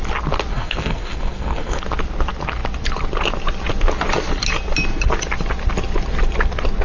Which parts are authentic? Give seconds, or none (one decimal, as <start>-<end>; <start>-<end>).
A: 0.0-0.5; 1.8-6.8